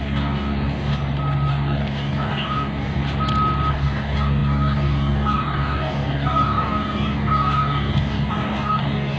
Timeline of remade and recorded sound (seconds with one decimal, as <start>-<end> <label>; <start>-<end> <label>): 0.0-0.9 remade; 0.9-1.5 recorded; 1.5-3.0 remade; 3.0-3.7 recorded; 3.7-9.2 remade